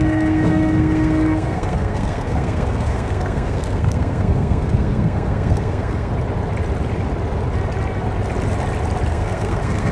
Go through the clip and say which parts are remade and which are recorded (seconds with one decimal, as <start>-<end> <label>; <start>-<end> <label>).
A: 0.0-6.1 remade; 6.1-9.1 recorded; 9.1-9.9 remade